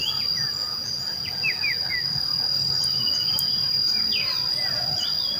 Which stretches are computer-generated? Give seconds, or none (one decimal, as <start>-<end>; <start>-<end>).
none